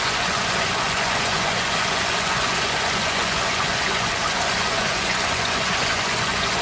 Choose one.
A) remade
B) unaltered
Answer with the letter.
A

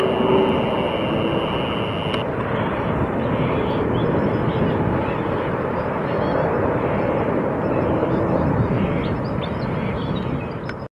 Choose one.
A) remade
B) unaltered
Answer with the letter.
B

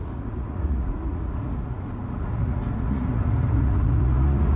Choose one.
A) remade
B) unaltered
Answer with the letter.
A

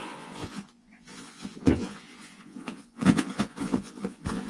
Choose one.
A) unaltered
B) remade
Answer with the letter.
B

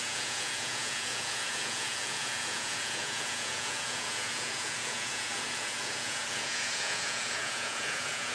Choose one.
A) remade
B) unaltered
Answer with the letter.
A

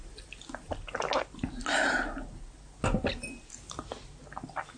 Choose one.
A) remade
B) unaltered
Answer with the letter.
B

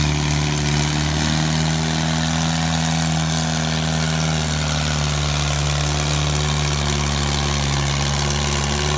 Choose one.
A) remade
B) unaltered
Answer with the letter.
B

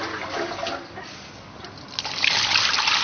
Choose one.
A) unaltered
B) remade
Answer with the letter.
A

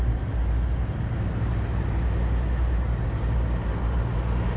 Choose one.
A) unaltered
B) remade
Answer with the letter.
A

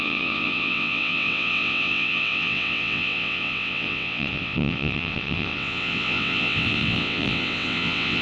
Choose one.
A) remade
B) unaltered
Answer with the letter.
A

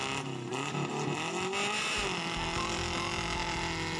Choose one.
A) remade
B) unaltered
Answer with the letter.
B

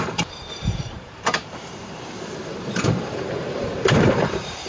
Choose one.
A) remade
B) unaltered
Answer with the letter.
A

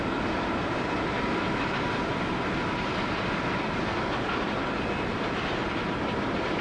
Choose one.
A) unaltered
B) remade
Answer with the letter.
A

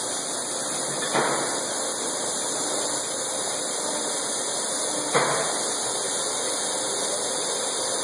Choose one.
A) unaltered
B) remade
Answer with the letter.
A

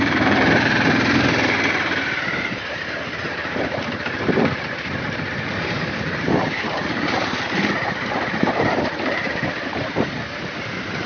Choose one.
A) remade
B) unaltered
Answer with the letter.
A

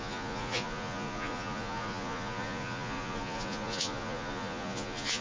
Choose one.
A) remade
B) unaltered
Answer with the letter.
A